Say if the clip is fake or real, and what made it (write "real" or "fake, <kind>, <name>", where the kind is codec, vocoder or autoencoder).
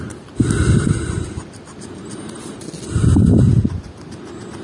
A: real